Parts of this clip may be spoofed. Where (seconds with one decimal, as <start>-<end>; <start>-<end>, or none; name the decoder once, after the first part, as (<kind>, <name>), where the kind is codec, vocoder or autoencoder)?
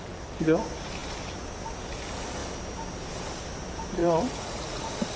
4.0-4.8 (vocoder, Vocos)